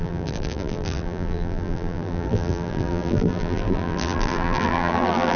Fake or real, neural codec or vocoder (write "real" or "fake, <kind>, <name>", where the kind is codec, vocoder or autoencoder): fake, vocoder, BigVGAN v2